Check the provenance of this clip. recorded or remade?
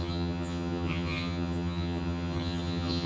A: remade